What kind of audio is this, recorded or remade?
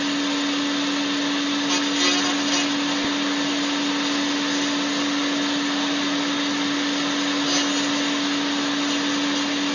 recorded